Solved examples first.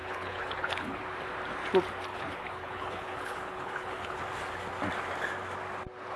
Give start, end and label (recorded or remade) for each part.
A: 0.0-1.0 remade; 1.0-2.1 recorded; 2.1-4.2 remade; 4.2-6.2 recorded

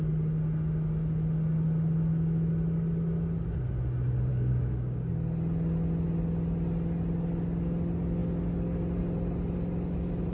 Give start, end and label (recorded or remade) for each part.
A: 0.0-4.3 recorded; 4.3-5.1 remade; 5.1-10.3 recorded

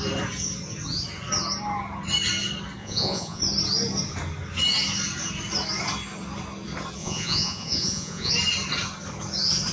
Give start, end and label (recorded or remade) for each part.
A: 0.0-2.8 recorded; 2.8-3.4 remade; 3.4-7.0 recorded; 7.0-8.3 remade; 8.3-9.7 recorded